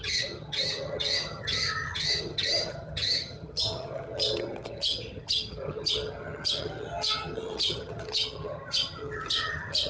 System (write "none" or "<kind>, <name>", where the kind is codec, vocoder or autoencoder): vocoder, HiFi-GAN